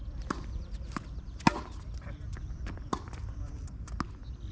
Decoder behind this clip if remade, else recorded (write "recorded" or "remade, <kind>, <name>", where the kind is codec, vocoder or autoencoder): recorded